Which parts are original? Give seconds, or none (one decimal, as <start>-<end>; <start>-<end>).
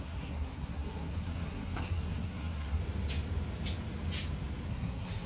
2.8-4.7